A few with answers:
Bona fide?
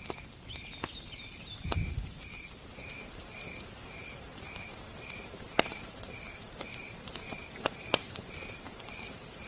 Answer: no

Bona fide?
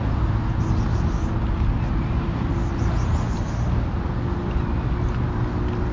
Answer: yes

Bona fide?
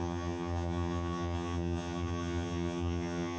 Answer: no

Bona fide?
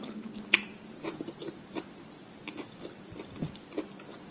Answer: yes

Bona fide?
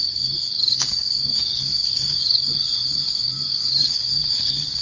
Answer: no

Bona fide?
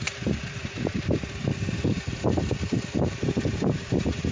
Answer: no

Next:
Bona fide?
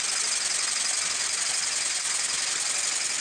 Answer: yes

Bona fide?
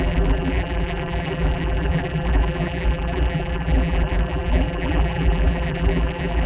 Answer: no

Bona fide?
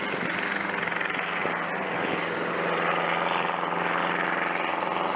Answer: yes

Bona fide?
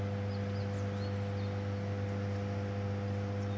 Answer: yes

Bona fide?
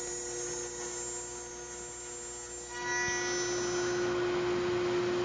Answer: yes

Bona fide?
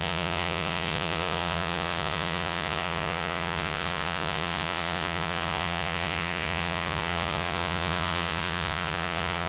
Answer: no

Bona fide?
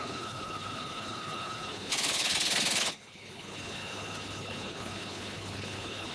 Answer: no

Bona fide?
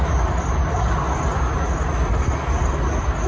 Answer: yes